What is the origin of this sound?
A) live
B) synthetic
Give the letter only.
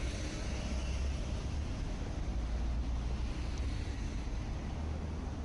A